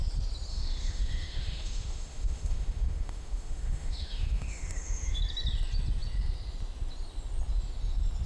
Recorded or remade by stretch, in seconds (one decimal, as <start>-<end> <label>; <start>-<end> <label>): 0.0-0.5 recorded; 0.5-5.2 remade; 5.2-8.3 recorded